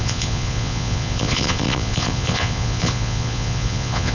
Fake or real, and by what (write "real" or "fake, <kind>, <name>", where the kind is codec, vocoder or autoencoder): fake, vocoder, Vocos